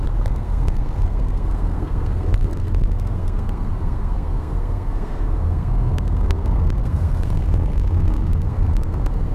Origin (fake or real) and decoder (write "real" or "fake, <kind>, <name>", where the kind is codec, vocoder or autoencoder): fake, codec, SNAC